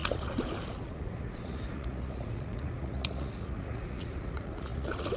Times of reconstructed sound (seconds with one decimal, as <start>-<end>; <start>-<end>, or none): 0.0-5.2